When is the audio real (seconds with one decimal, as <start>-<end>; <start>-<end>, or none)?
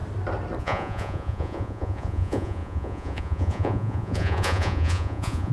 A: 0.0-0.6